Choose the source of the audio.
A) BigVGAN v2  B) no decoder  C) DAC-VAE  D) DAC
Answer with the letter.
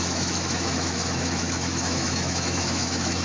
C